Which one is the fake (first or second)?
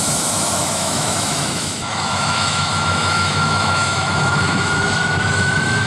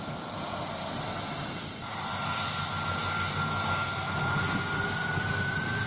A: first